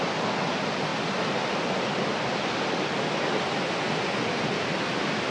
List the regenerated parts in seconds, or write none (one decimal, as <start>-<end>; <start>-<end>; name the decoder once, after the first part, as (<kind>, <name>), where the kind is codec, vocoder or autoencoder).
none